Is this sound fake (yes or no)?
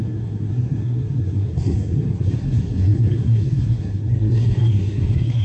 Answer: yes